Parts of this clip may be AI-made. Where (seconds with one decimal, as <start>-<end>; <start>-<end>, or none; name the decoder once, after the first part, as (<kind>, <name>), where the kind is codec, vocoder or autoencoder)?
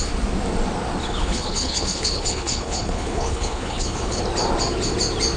1.0-4.2 (codec, HILCodec)